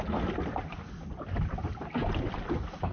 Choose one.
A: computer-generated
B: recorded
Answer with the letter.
B